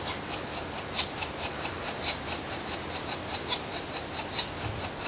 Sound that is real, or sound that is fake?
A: real